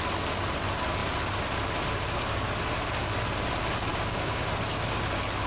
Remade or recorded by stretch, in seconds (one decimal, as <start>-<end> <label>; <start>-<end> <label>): 0.0-3.9 recorded; 3.9-4.4 remade; 4.4-5.5 recorded